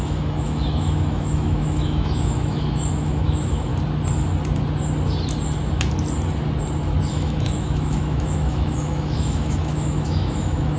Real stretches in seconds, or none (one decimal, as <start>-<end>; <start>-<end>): 3.7-7.1